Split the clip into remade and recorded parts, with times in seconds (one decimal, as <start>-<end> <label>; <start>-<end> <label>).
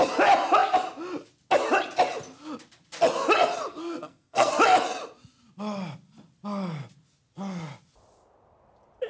0.0-3.7 recorded; 3.7-4.5 remade; 4.5-9.1 recorded